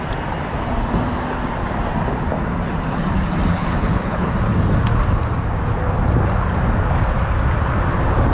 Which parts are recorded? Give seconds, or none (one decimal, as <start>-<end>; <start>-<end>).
0.0-3.5; 4.3-8.3